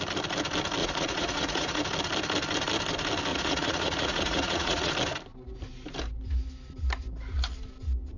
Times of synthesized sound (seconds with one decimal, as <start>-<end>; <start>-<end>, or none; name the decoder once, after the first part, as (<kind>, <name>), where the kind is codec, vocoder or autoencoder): 0.8-1.8 (vocoder, Vocos); 3.3-4.9